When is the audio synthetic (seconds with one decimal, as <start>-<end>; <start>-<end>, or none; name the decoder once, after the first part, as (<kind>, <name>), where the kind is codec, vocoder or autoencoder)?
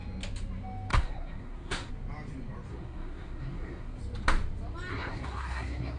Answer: 0.9-1.9 (codec, SNAC); 2.7-4.0; 4.9-6.0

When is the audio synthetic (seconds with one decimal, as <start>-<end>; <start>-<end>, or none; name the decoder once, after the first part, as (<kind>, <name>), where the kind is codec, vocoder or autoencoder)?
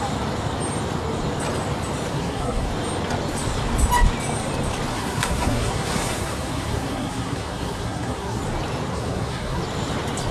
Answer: 2.1-2.7 (codec, SNAC); 4.9-8.4; 8.9-9.6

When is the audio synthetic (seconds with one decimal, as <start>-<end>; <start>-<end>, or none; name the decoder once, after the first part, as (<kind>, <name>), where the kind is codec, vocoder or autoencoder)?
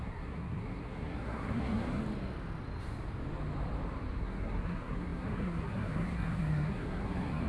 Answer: 0.0-2.0 (codec, SNAC); 4.2-7.5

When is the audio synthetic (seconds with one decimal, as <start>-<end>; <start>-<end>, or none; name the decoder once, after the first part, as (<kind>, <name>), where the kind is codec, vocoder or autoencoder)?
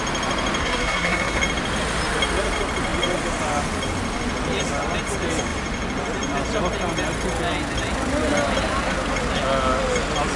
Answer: 0.6-1.4 (codec, SNAC)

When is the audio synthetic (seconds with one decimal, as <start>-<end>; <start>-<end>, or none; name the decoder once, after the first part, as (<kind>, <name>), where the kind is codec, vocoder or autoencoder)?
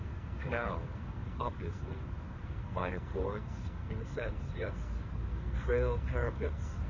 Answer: 0.0-6.9 (codec, SNAC)